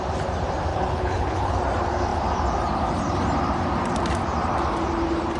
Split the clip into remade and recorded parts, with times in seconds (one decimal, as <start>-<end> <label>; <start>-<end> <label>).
0.0-0.7 recorded; 0.7-1.6 remade; 1.6-5.4 recorded